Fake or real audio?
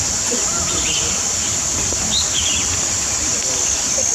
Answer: real